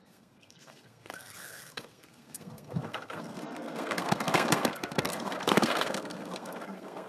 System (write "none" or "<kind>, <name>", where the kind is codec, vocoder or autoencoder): codec, SNAC